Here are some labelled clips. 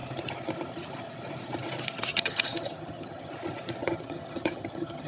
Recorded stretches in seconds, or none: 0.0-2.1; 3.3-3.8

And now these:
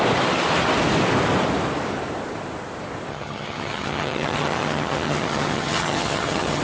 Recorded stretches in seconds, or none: 0.0-3.1

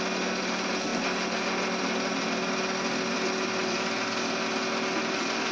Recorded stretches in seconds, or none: 0.0-5.5